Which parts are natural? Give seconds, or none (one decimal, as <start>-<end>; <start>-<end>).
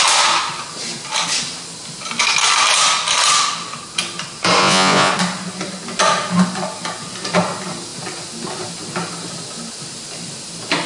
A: 0.0-4.6; 5.1-10.9